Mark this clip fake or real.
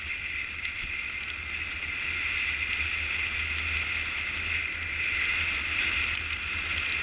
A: real